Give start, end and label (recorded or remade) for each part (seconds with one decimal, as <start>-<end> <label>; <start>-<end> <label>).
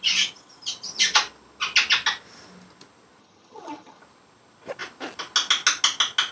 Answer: 0.0-3.2 recorded; 3.2-4.0 remade; 4.0-6.3 recorded